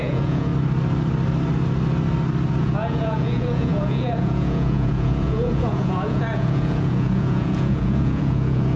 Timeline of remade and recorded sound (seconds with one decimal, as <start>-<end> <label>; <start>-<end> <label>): 0.0-0.5 remade; 0.5-2.6 recorded; 2.6-8.8 remade